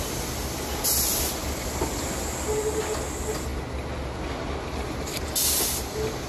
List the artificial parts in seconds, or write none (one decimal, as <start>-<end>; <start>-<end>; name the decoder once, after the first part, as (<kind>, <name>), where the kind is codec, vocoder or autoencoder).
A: none